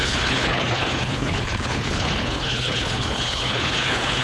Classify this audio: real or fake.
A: fake